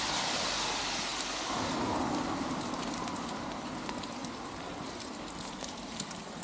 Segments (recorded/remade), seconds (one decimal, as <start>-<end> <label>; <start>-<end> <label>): 0.0-6.4 recorded

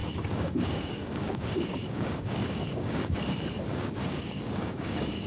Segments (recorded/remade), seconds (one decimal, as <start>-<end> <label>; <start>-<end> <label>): 0.0-3.2 remade; 3.2-3.7 recorded; 3.7-5.3 remade

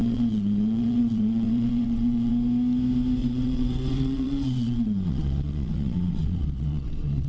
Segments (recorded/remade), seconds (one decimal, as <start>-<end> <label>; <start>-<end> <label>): 0.0-2.3 remade; 2.3-3.2 recorded; 3.2-7.3 remade

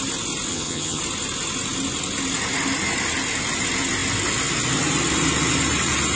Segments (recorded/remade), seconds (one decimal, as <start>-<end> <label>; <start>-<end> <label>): 0.0-0.5 recorded; 0.5-1.0 remade; 1.0-6.2 recorded